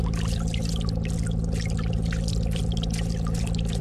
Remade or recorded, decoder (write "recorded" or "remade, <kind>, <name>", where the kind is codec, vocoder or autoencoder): recorded